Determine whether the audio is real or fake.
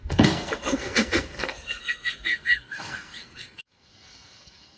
fake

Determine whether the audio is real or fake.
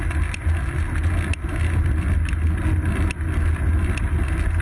real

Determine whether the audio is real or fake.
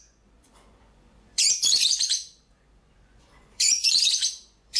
fake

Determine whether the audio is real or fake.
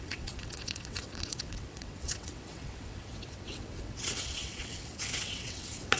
fake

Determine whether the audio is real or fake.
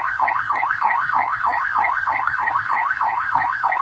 fake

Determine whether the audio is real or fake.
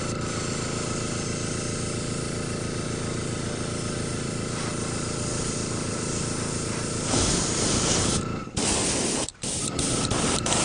fake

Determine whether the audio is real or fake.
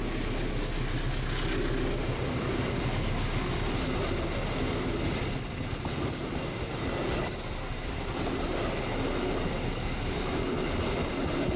real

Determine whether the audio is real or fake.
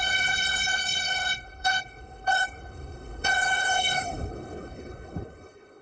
fake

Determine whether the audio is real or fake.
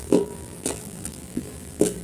fake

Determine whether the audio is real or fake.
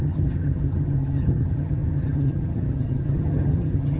fake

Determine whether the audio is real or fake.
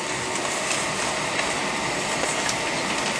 real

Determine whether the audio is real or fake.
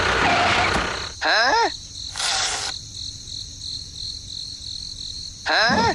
real